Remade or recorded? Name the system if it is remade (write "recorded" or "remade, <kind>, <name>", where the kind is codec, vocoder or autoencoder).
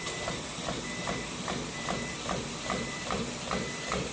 remade, vocoder, BigVGAN v2